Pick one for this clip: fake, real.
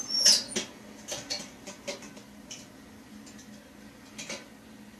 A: real